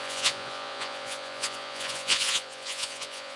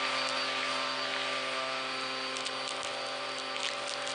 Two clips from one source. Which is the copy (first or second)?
first